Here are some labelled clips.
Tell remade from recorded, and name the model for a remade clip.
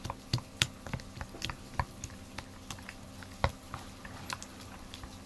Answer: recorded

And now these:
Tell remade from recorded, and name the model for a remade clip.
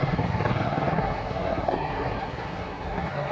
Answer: remade, codec, SNAC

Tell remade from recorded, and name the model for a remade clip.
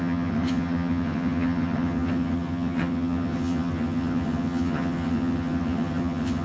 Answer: remade, vocoder, HiFi-GAN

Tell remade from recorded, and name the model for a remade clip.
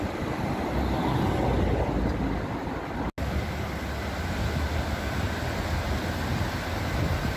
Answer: recorded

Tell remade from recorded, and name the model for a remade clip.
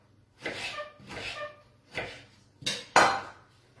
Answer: recorded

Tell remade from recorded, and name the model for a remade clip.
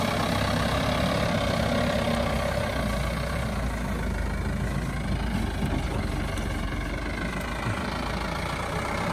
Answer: recorded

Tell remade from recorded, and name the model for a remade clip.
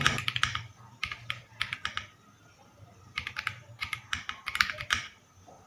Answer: remade, vocoder, BigVGAN v2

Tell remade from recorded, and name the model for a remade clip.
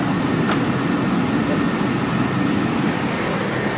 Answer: recorded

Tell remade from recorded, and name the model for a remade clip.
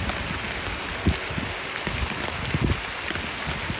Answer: recorded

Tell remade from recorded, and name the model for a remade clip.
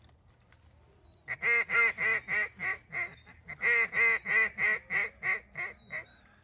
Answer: recorded